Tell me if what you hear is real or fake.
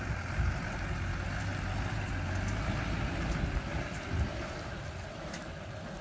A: real